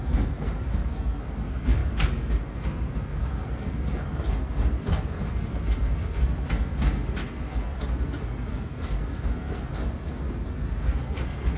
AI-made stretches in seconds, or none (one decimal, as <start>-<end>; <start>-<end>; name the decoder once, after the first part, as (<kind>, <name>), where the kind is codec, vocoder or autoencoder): 0.0-11.6 (codec, SNAC)